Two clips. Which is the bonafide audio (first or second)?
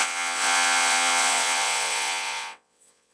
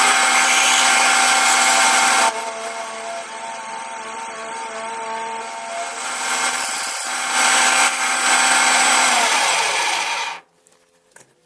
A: second